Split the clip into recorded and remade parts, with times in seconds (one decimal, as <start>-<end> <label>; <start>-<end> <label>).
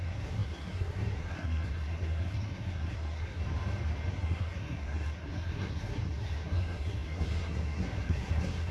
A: 0.0-3.4 remade; 3.4-4.1 recorded; 4.1-8.7 remade